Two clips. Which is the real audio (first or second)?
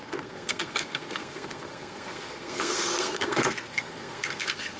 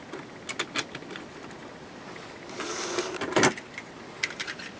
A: second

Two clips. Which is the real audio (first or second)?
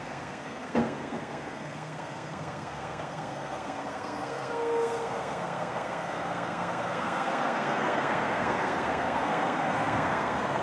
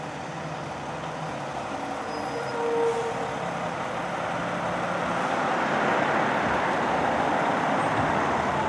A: second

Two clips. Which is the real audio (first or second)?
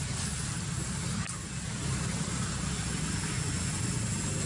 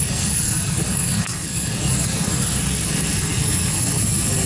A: first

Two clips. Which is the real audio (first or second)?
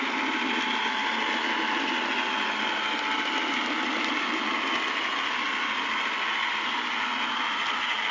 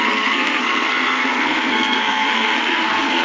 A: first